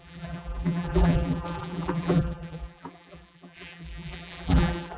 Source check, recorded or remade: remade